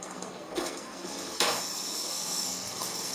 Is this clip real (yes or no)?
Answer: no